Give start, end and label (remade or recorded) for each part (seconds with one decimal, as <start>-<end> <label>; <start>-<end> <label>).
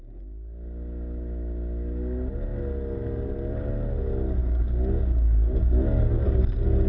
0.0-4.4 recorded; 4.4-6.4 remade; 6.4-6.9 recorded